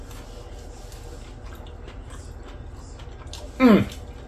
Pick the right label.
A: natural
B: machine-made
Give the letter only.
A